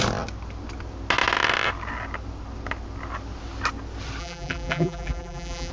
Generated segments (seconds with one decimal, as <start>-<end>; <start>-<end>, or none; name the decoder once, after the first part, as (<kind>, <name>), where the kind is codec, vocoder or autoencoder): 4.2-5.7 (vocoder, BigVGAN v2)